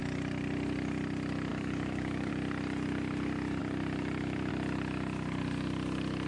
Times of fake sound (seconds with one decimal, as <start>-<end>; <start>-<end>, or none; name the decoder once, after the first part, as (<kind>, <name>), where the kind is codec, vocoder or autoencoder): 1.5-2.3 (codec, DAC)